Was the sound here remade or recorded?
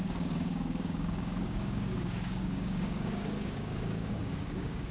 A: remade